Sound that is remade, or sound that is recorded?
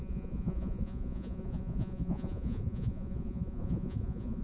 remade